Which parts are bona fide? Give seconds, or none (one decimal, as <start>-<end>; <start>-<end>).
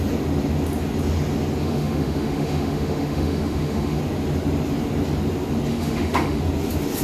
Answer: 0.0-1.6; 4.0-5.7; 6.4-7.0